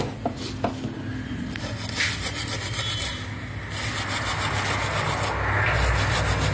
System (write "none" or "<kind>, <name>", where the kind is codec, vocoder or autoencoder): none